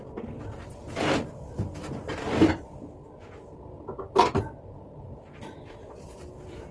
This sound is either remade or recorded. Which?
recorded